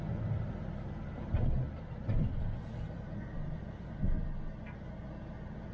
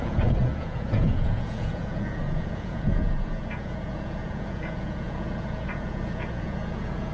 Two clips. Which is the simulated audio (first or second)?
second